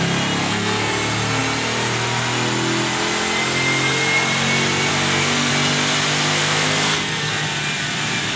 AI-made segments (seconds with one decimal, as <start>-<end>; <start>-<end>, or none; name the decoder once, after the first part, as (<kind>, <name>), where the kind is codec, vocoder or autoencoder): 0.4-0.9 (codec, SNAC); 4.9-5.5; 6.3-7.3